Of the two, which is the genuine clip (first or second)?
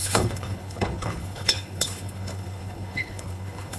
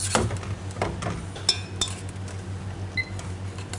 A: second